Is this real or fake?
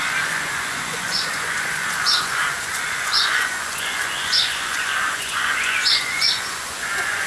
fake